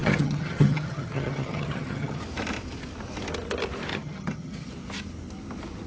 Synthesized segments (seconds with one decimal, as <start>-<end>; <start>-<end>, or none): 0.0-2.2; 3.9-4.7